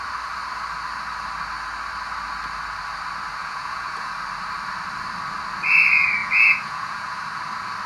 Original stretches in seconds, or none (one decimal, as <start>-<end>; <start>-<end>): 0.0-3.4; 4.1-6.2; 7.1-7.9

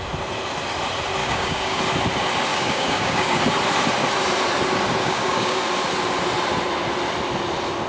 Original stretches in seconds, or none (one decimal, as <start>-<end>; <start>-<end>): 0.0-1.2; 1.8-2.5; 3.4-5.0; 5.6-7.9

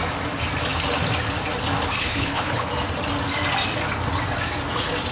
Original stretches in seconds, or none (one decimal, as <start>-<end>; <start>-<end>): 0.0-2.0; 2.7-5.1

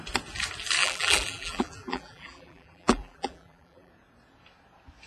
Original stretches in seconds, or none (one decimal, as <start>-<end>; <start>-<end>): 0.0-0.8; 3.9-5.1

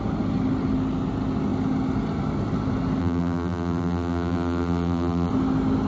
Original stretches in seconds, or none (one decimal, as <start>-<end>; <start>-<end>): 0.0-3.0; 5.3-5.9

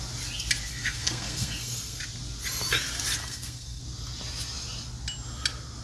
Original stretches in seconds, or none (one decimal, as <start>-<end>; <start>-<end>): 0.0-0.7; 2.0-3.2; 3.8-5.8

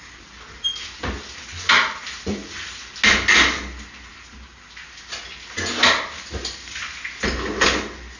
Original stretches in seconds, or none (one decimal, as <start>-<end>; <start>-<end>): 0.0-8.2